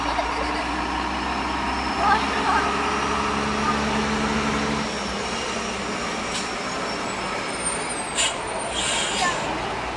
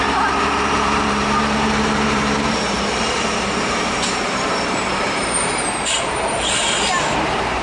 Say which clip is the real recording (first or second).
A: first